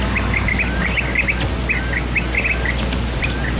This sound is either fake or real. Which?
real